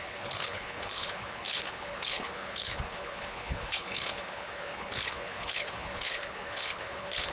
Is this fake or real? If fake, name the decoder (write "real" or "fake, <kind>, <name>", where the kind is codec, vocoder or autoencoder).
fake, codec, HILCodec